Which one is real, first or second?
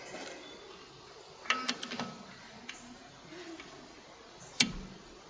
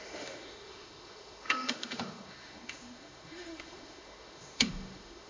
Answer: first